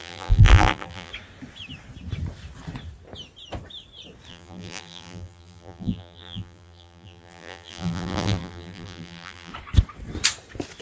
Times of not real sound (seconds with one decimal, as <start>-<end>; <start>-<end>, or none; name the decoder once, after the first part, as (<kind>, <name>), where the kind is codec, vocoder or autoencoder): 0.0-1.1 (vocoder, BigVGAN v2); 4.3-9.5

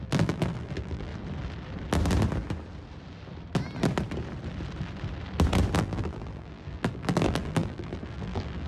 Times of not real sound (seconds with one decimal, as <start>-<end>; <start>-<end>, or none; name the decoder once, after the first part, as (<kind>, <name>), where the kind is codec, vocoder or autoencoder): 0.0-1.1 (vocoder, BigVGAN v2); 5.8-8.7

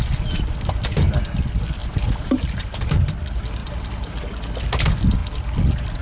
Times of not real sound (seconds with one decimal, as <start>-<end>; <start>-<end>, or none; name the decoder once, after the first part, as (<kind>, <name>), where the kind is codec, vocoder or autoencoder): 1.8-3.1 (vocoder, BigVGAN v2); 3.6-4.1

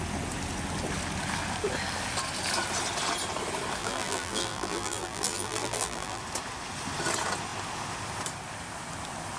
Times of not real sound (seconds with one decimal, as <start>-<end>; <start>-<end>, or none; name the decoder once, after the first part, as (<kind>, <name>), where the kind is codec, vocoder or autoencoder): 3.8-6.2 (vocoder, BigVGAN v2)

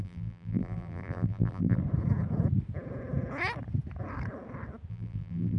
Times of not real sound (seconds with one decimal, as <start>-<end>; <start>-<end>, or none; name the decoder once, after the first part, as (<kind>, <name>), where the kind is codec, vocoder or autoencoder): 0.0-1.8 (vocoder, BigVGAN v2); 4.9-5.6

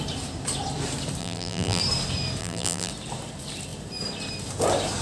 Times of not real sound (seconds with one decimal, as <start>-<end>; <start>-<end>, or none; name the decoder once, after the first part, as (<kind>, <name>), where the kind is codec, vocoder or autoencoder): 1.2-1.8 (vocoder, BigVGAN v2); 2.4-2.9